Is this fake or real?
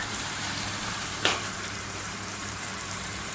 fake